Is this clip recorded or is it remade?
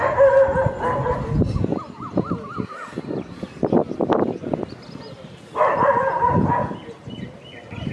recorded